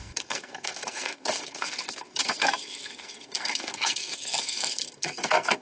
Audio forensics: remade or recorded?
remade